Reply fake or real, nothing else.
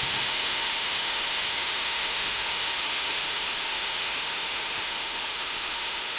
fake